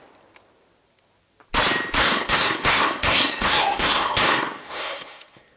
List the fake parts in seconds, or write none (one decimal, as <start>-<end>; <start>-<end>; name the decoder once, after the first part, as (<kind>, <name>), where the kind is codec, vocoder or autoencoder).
2.0-5.6 (codec, SNAC)